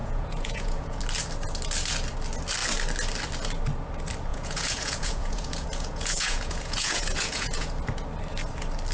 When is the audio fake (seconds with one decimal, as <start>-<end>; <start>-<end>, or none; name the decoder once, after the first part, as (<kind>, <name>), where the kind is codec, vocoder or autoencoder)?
0.0-1.0 (vocoder, Vocos); 4.3-7.7